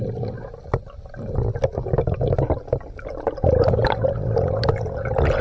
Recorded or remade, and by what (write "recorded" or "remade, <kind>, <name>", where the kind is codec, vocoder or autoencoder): recorded